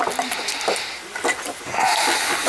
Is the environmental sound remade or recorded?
recorded